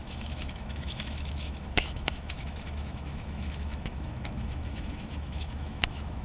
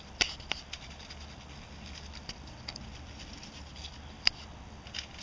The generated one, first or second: first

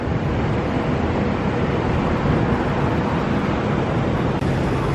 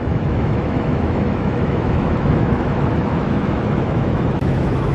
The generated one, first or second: second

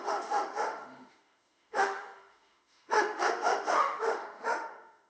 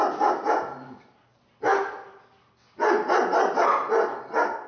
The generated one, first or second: first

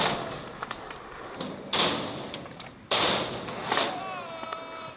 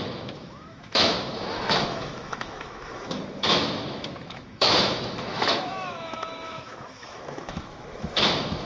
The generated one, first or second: second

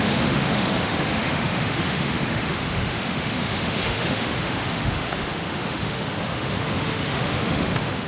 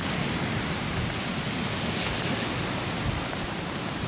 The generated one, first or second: first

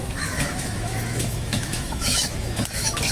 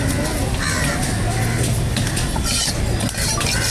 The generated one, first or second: first